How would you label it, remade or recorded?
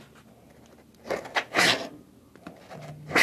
recorded